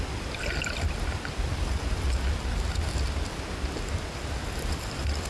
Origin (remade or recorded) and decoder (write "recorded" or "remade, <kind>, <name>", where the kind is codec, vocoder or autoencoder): recorded